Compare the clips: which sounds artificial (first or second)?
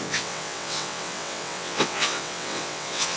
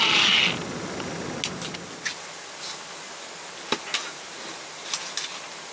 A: first